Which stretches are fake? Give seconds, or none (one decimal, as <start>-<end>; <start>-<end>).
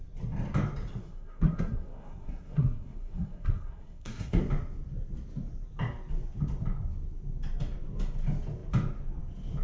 1.0-4.4